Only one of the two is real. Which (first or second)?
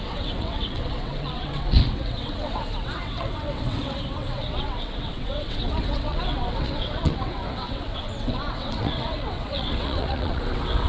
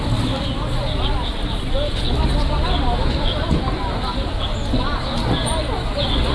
second